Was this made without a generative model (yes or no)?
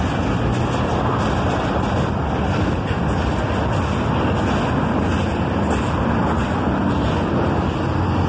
yes